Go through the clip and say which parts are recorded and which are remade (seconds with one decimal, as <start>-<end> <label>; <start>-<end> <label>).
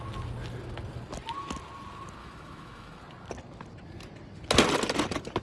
0.0-2.2 recorded; 2.2-3.0 remade; 3.0-5.4 recorded